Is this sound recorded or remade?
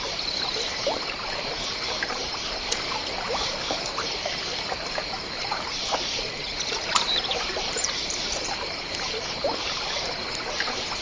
remade